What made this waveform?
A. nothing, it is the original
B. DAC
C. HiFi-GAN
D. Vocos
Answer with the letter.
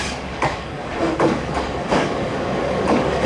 B